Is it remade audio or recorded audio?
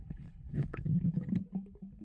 remade